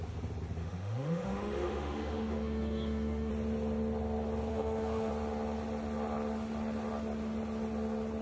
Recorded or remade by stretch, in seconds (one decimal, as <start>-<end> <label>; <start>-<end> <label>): 0.0-0.6 recorded; 0.6-3.3 remade; 3.3-4.5 recorded; 4.5-5.1 remade; 5.1-8.2 recorded